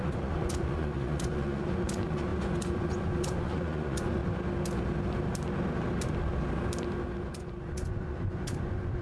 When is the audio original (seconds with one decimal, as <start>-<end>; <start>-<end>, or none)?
4.2-7.3